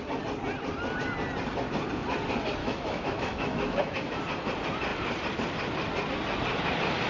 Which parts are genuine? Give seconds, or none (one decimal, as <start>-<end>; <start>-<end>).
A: 0.0-2.6; 4.2-7.1